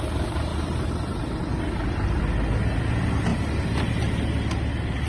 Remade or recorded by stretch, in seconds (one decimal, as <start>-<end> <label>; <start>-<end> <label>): 0.0-5.1 recorded